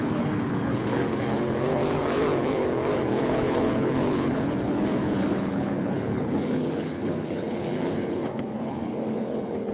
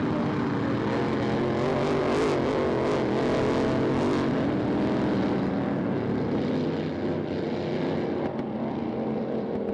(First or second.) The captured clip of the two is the second